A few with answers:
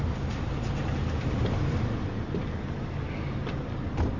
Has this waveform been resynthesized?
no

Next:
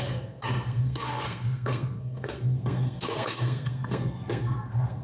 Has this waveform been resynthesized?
yes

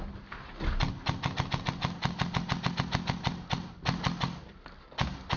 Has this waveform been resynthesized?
no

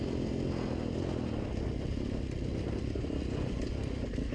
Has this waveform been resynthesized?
no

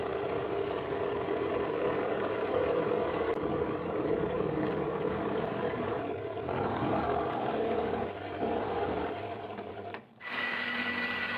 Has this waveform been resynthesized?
yes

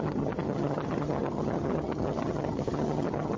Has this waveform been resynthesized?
yes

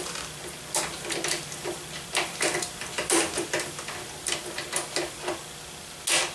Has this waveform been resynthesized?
no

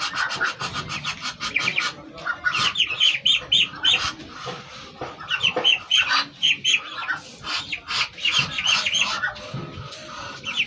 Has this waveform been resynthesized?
no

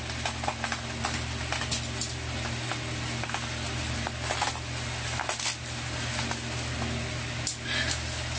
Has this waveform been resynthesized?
no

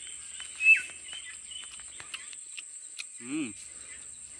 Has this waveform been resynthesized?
no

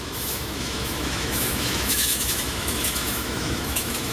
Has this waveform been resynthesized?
yes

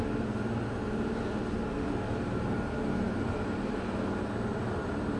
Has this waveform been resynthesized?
no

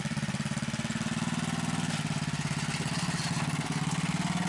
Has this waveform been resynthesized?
yes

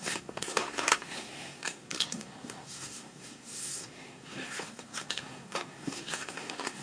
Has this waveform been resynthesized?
yes